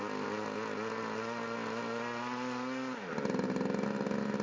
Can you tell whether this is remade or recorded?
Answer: recorded